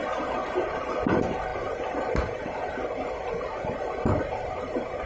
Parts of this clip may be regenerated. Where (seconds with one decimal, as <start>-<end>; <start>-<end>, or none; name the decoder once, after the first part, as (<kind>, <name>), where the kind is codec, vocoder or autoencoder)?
none